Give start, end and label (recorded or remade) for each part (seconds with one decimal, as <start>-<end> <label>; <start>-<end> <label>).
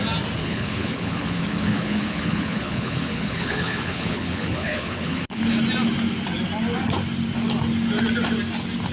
0.0-0.4 recorded; 0.4-5.4 remade; 5.4-8.9 recorded